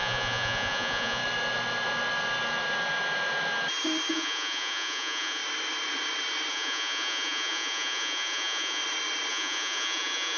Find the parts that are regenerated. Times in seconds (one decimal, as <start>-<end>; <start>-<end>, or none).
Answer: 0.0-1.2; 4.1-5.4; 6.5-8.8; 9.3-10.4